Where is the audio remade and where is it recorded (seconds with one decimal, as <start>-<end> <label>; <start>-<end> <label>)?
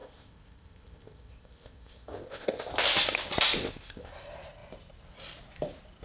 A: 0.0-2.7 remade; 2.7-3.6 recorded; 3.6-4.1 remade; 4.1-6.0 recorded